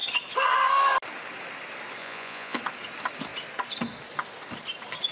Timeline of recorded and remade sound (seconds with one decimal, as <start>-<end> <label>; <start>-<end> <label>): 0.0-2.0 recorded; 2.0-2.6 remade; 2.6-5.1 recorded